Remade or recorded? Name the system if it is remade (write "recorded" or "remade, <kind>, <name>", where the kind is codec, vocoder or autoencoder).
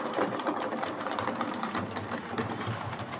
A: remade, vocoder, BigVGAN v2